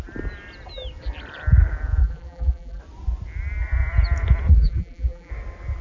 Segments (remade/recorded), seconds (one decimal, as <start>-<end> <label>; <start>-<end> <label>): 0.0-2.0 recorded; 2.0-2.8 remade; 2.8-4.5 recorded; 4.5-5.3 remade; 5.3-5.8 recorded